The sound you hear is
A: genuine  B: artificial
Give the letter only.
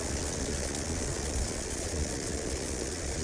B